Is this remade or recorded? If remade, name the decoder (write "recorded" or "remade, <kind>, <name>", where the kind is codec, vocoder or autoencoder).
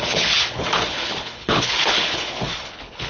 remade, codec, HILCodec